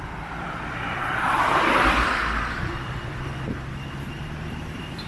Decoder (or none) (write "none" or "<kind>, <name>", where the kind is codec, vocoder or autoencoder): vocoder, BigVGAN v2